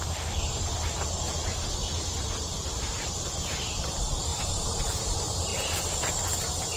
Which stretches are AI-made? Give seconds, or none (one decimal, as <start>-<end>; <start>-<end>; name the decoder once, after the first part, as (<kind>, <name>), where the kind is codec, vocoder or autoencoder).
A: 1.8-3.5 (vocoder, BigVGAN v2); 4.3-4.9; 5.5-6.1